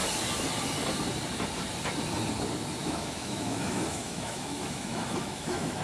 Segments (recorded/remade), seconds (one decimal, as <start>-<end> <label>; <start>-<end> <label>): 0.0-2.8 recorded; 2.8-5.8 remade